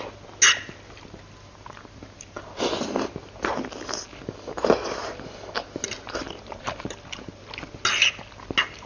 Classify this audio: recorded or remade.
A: recorded